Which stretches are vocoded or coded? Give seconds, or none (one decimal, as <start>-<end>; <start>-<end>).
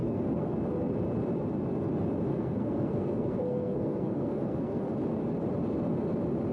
0.0-0.5; 2.3-4.9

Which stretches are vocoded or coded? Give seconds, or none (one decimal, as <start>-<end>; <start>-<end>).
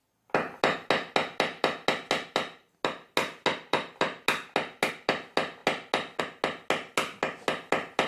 none